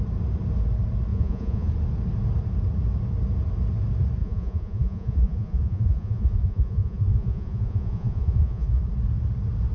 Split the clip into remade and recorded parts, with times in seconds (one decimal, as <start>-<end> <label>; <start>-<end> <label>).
0.0-1.1 recorded; 1.1-1.7 remade; 1.7-4.2 recorded; 4.2-8.8 remade; 8.8-9.7 recorded